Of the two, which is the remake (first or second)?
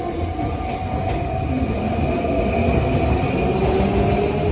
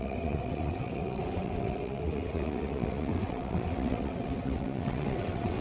second